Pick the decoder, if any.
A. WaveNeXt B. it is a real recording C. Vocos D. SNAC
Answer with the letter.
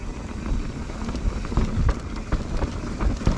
B